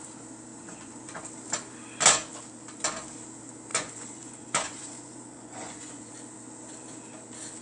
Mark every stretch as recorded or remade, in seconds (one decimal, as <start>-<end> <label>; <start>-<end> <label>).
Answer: 0.0-0.5 recorded; 0.5-1.2 remade; 1.2-3.7 recorded; 3.7-6.1 remade; 6.1-7.6 recorded